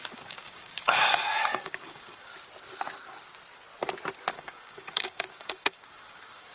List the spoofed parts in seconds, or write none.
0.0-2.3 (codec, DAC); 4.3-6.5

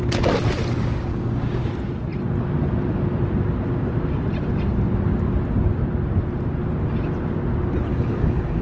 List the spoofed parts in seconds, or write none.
0.8-1.7 (codec, DAC); 7.9-8.6

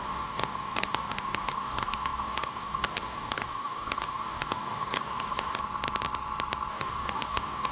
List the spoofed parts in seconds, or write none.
0.0-5.6 (codec, DAC); 6.7-7.7

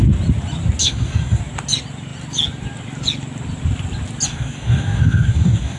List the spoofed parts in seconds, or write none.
0.8-1.4 (codec, DAC); 4.3-5.8

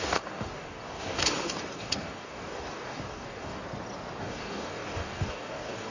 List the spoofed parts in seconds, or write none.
0.0-3.6 (codec, DAC); 4.2-5.9

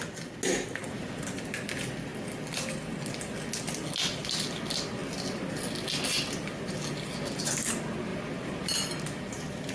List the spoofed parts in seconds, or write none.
none

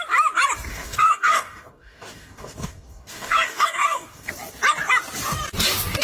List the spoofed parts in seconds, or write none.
0.7-4.3 (codec, DAC)